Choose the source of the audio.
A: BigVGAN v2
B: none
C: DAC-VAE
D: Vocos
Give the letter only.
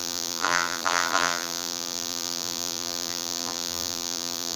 A